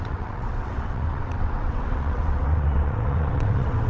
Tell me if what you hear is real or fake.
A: fake